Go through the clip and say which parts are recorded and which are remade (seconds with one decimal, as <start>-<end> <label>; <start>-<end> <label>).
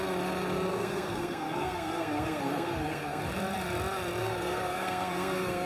0.0-0.7 recorded; 0.7-3.2 remade; 3.2-4.2 recorded; 4.2-5.7 remade